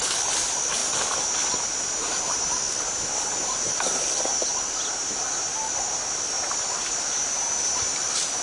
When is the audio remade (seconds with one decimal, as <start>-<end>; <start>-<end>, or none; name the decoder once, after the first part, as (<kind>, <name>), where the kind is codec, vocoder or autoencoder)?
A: none